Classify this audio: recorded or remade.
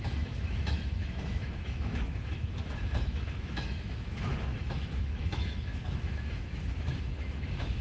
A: remade